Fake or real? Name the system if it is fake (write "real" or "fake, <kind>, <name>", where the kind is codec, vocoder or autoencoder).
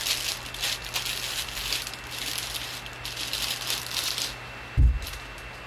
real